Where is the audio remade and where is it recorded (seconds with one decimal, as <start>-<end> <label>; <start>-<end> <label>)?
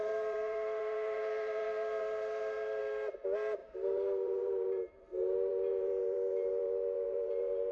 0.0-2.8 remade; 2.8-3.6 recorded; 3.6-7.7 remade